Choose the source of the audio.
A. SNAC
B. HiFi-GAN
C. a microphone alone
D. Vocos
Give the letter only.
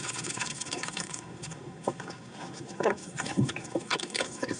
A